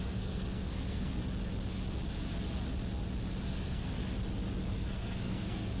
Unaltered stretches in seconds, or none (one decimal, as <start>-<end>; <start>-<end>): 1.2-3.5; 4.0-4.7